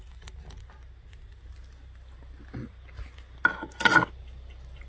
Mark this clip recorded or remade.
recorded